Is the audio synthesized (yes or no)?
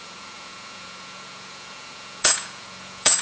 yes